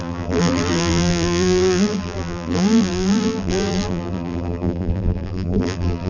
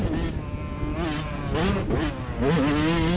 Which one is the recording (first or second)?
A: second